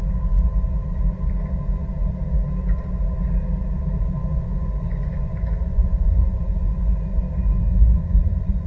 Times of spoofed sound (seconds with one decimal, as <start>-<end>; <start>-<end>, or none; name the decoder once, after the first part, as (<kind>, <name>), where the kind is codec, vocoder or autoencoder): 4.3-7.2 (vocoder, Vocos); 8.0-8.7